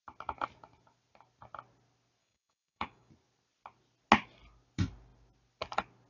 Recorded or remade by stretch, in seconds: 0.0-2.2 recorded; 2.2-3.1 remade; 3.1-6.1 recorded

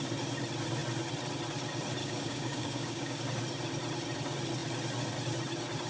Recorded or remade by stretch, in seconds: 0.0-2.0 recorded; 2.0-3.2 remade; 3.2-5.9 recorded

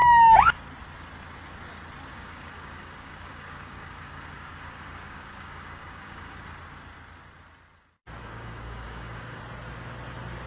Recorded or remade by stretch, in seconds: 0.0-2.1 recorded; 2.1-6.4 remade; 6.4-8.2 recorded; 8.2-9.4 remade; 9.4-10.5 recorded

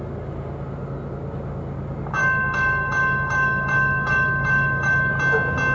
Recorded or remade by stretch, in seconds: 0.0-2.2 recorded; 2.2-5.1 remade; 5.1-5.7 recorded

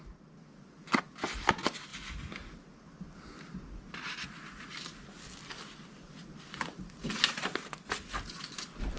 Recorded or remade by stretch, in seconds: 0.0-9.0 recorded